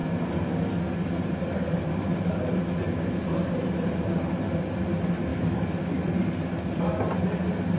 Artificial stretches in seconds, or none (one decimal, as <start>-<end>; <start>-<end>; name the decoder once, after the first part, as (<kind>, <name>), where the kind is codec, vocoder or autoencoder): 5.3-6.0 (autoencoder, DAC-VAE)